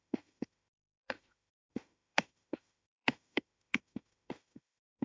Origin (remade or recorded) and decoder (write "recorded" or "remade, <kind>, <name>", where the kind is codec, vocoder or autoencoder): remade, autoencoder, DAC-VAE